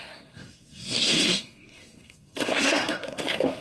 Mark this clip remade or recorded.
remade